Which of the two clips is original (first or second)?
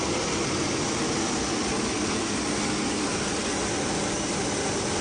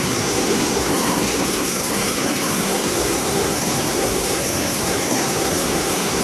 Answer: first